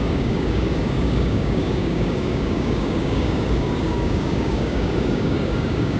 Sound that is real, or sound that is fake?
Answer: fake